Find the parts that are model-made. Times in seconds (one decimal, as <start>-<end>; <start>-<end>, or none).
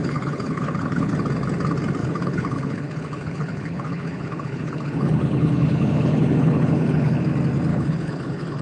0.0-1.1; 2.0-7.2; 7.7-8.6